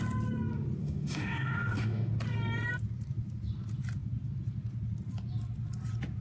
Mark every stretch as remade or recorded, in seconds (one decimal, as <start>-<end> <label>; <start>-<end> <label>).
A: 0.0-0.8 recorded; 0.8-2.1 remade; 2.1-6.2 recorded